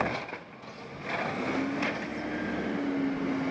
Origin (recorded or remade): recorded